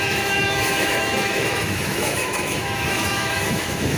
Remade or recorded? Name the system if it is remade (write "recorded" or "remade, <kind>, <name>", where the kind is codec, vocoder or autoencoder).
remade, autoencoder, DAC-VAE